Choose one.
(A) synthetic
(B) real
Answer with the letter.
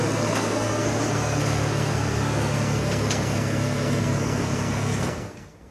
A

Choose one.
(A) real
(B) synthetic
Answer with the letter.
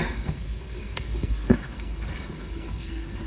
B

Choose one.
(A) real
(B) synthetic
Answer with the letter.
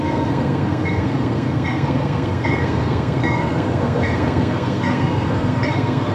B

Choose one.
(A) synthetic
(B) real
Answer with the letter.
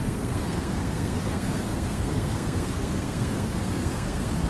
A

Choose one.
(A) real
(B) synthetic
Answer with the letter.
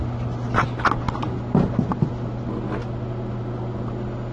A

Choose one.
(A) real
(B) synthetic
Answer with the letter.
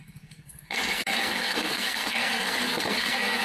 B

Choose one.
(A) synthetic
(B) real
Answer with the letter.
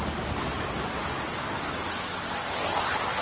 B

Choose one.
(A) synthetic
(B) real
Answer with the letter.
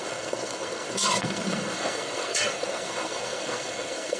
A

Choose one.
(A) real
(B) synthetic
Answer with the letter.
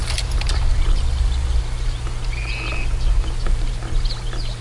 A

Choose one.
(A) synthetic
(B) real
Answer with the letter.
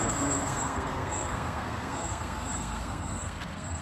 A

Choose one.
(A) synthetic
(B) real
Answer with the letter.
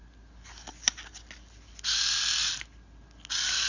B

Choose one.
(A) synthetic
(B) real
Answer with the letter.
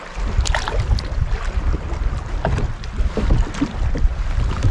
B